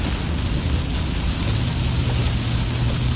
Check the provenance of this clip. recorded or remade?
recorded